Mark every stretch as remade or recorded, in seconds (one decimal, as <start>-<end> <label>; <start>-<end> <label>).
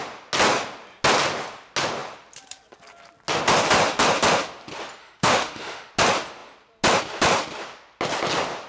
0.0-5.0 recorded; 5.0-5.9 remade; 5.9-8.7 recorded